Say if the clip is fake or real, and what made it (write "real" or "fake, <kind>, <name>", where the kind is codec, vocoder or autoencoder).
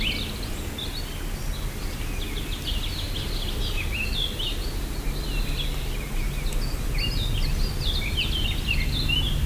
real